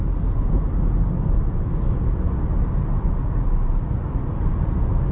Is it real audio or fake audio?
real